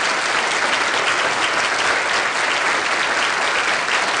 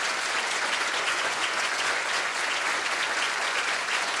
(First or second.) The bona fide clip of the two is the first